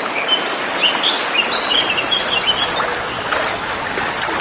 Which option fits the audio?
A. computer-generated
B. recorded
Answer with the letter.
B